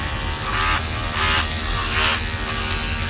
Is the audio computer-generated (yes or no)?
no